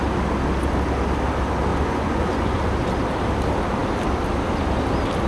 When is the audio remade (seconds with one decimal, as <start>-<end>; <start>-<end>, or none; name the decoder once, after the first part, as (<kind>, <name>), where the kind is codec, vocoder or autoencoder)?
1.7-2.7 (vocoder, Vocos)